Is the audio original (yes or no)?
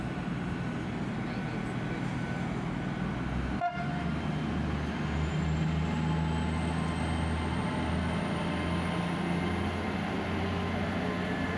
yes